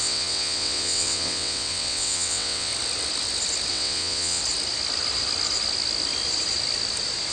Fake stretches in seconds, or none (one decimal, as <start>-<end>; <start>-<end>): 0.0-2.7; 3.7-4.4